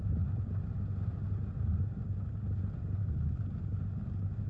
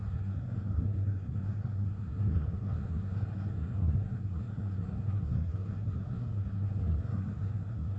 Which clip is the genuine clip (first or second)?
first